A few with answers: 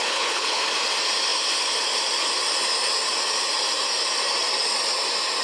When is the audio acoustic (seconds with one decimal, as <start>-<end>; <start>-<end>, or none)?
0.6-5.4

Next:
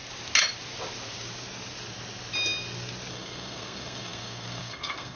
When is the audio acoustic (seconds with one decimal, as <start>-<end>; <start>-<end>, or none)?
0.0-3.1

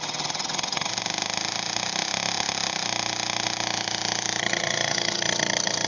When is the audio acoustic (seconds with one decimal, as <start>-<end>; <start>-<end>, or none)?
0.9-4.4